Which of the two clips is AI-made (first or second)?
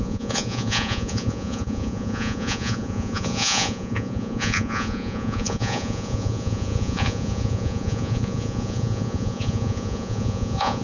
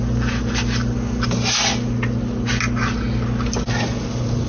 first